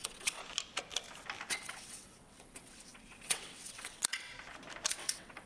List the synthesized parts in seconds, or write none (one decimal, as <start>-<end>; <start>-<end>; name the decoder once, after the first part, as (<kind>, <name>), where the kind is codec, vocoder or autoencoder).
0.0-0.4 (vocoder, WaveNeXt); 1.5-4.3; 4.9-5.5